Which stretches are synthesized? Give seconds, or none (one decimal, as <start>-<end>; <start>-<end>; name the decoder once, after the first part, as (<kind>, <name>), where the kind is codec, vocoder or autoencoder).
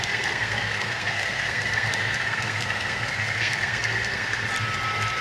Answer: 0.0-4.5 (codec, SNAC)